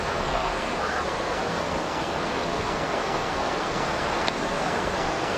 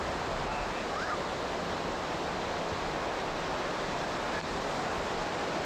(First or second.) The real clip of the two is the second